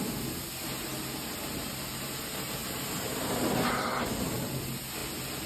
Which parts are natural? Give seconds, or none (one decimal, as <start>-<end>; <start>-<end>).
0.0-5.5